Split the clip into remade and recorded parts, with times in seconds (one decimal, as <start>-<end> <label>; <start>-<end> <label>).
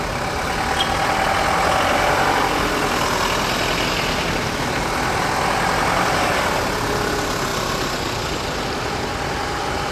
0.0-9.9 recorded